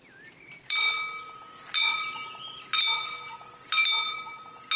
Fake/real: real